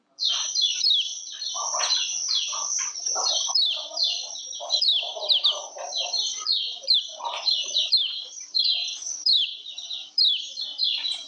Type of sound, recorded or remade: remade